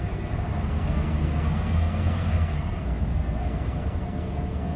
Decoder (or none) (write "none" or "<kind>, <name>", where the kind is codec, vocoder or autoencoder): codec, SNAC